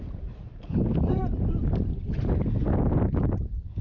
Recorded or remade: recorded